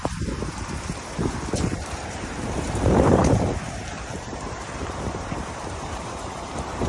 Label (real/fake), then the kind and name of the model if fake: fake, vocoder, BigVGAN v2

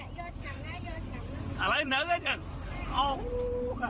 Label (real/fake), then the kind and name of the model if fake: fake, vocoder, BigVGAN v2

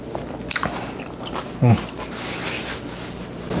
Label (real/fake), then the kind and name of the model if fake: real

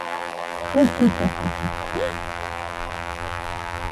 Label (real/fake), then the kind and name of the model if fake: fake, vocoder, BigVGAN v2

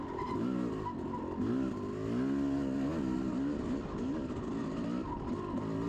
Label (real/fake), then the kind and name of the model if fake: real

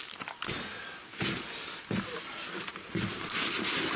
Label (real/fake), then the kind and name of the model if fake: real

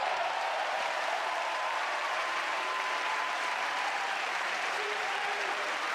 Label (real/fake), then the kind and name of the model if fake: fake, vocoder, BigVGAN v2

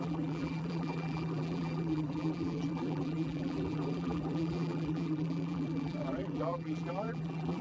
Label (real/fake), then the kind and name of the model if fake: fake, vocoder, BigVGAN v2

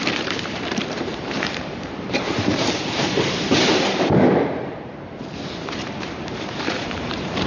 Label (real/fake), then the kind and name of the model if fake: fake, vocoder, BigVGAN v2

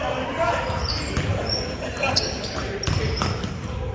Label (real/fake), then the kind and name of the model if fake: fake, vocoder, BigVGAN v2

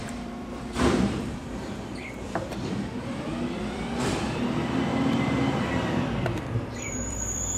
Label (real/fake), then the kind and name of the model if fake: fake, vocoder, BigVGAN v2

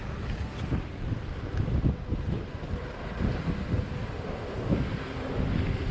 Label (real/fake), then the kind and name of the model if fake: fake, vocoder, BigVGAN v2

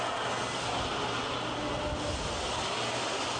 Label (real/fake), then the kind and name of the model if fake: real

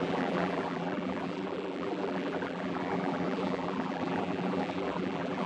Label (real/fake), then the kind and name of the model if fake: fake, vocoder, BigVGAN v2